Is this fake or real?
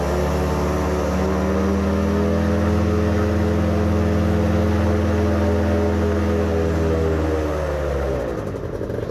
real